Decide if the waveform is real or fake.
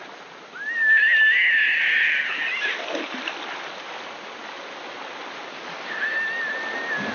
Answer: real